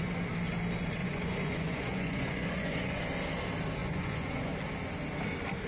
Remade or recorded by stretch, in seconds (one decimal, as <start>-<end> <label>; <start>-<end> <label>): 0.0-1.0 recorded; 1.0-3.0 remade; 3.0-3.8 recorded; 3.8-4.5 remade; 4.5-5.7 recorded